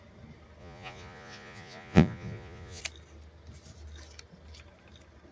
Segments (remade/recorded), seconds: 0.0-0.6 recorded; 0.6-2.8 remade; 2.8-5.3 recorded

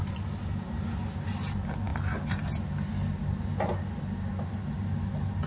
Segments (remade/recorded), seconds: 0.0-5.5 recorded

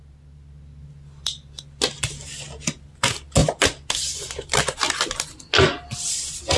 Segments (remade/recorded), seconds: 0.0-6.6 recorded

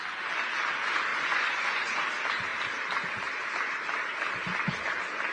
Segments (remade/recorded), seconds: 0.0-1.1 recorded; 1.1-2.0 remade; 2.0-5.3 recorded

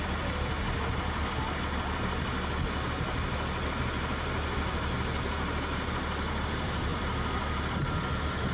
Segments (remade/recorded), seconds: 0.0-6.9 recorded; 6.9-7.6 remade; 7.6-8.5 recorded

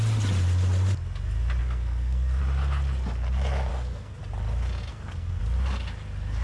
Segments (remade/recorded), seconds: 0.0-1.6 recorded; 1.6-2.4 remade; 2.4-3.7 recorded; 3.7-4.2 remade; 4.2-4.9 recorded; 4.9-5.4 remade; 5.4-6.4 recorded

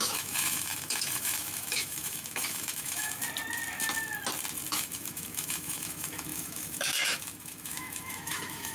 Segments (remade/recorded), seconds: 0.0-3.2 remade; 3.2-4.7 recorded; 4.7-8.7 remade